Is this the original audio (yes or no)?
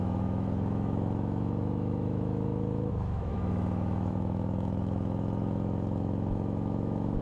no